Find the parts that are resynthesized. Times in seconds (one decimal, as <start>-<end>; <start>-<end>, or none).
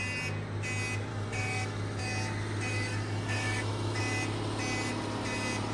1.1-2.0; 2.7-4.0